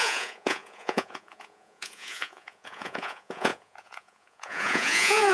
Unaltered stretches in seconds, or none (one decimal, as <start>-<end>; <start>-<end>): none